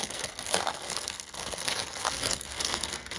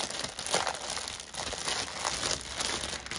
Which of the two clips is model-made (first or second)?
first